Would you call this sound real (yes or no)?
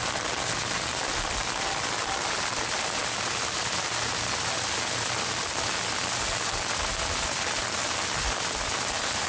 yes